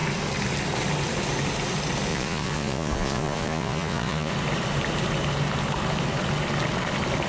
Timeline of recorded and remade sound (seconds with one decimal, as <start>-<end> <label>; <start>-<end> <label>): 0.0-2.1 recorded; 2.1-4.3 remade; 4.3-7.3 recorded